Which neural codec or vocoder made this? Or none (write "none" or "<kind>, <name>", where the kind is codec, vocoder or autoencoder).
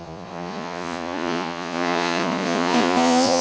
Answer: vocoder, Vocos